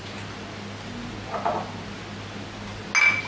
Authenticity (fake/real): real